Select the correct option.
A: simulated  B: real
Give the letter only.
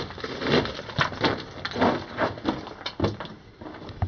B